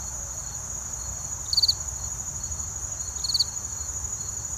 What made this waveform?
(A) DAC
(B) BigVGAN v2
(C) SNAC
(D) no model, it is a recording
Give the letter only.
D